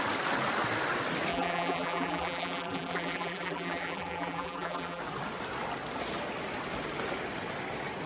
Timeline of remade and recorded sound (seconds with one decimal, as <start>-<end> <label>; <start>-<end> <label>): 0.0-1.3 recorded; 1.3-5.0 remade; 5.0-8.1 recorded